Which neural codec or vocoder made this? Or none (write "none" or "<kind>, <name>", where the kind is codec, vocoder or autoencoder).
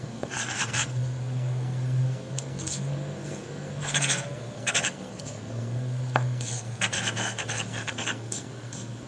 codec, SNAC